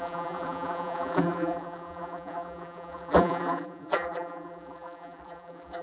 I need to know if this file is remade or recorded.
remade